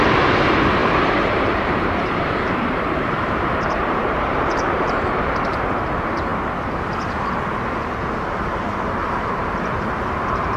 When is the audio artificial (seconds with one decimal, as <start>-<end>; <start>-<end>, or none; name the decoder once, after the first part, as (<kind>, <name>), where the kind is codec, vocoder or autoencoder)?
0.8-5.6 (vocoder, BigVGAN v2)